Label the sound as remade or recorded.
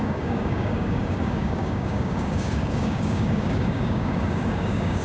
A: remade